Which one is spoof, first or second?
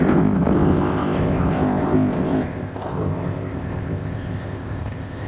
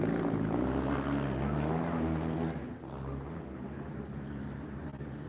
first